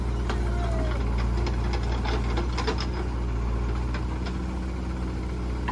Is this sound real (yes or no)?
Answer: yes